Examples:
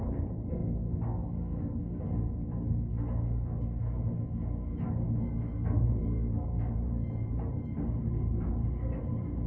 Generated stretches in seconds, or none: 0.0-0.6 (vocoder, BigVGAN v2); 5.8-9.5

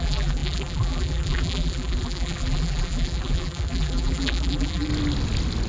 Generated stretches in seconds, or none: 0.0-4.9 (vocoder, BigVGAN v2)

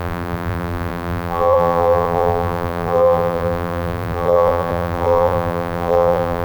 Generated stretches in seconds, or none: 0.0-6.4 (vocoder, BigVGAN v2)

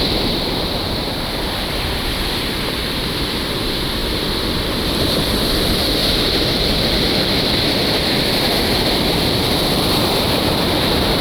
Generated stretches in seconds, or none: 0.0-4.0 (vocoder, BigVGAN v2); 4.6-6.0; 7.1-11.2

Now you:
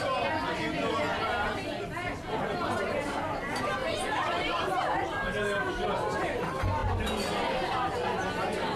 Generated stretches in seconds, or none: 3.8-5.7 (vocoder, BigVGAN v2)